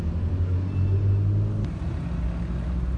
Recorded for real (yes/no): yes